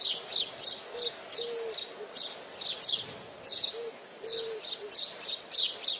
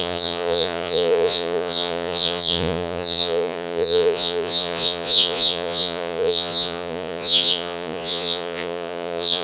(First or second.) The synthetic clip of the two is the second